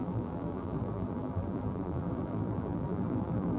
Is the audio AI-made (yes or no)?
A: yes